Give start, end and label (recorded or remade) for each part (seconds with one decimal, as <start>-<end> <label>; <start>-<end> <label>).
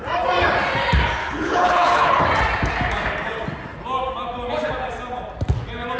0.0-1.2 recorded; 1.2-2.2 remade; 2.2-6.0 recorded